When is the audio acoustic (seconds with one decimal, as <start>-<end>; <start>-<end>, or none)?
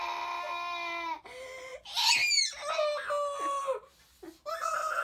0.0-5.0